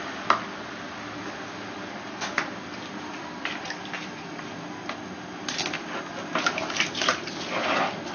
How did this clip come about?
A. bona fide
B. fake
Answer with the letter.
A